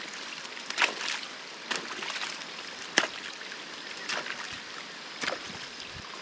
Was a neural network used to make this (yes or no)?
no